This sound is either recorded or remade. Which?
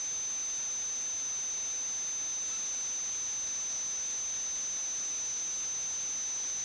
recorded